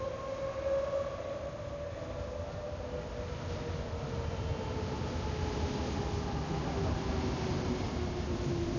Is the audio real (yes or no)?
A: yes